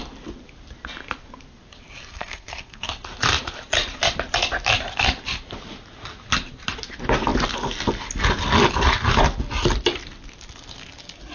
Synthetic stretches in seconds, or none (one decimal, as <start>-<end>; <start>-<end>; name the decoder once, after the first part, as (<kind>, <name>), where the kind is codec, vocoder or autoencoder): 2.1-2.9 (codec, SNAC)